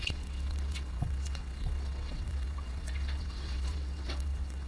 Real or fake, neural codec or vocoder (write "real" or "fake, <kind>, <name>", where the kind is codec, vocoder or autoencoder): fake, vocoder, WaveNeXt